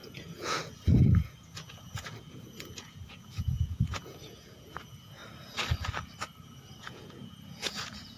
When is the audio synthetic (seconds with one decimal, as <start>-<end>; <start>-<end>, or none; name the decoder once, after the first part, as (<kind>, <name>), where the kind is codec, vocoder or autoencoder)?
0.0-5.2 (vocoder, Vocos); 6.8-8.2